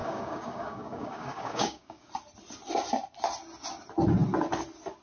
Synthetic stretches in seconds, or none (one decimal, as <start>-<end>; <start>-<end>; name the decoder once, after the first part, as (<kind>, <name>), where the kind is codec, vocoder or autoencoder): 0.0-2.1 (codec, DAC)